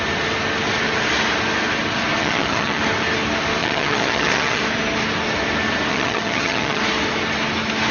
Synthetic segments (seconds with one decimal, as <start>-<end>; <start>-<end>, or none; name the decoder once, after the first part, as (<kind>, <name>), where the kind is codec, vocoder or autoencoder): 2.2-2.8 (vocoder, HiFi-GAN); 3.6-4.6; 5.9-6.8